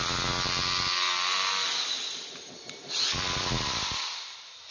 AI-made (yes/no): no